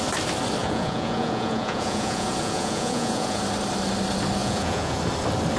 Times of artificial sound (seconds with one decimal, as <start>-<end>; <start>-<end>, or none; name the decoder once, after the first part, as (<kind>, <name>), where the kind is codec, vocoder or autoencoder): 0.6-3.4 (vocoder, Vocos); 4.4-5.0